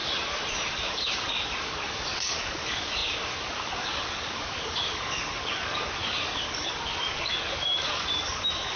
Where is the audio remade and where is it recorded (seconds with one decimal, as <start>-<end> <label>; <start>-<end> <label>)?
0.0-0.7 recorded; 0.7-8.8 remade